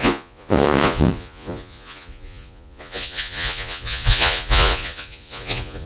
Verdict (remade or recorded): remade